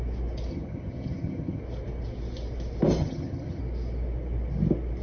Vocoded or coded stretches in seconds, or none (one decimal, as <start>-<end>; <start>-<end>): 0.5-1.6; 3.0-3.6